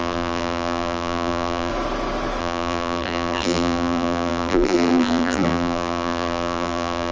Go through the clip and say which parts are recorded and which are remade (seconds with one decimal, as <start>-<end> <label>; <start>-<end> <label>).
0.0-1.7 remade; 1.7-2.4 recorded; 2.4-7.1 remade